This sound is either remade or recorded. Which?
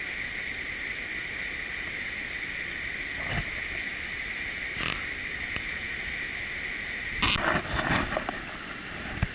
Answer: recorded